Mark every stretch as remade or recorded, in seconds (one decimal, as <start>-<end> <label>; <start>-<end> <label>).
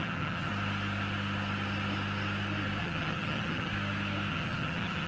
0.0-0.5 remade; 0.5-2.8 recorded; 2.8-3.7 remade; 3.7-4.3 recorded; 4.3-5.1 remade